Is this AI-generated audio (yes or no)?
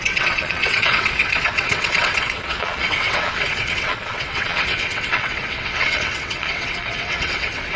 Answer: yes